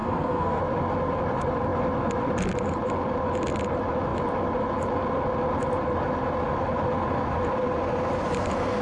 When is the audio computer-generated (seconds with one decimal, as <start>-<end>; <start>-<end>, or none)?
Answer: 0.0-0.6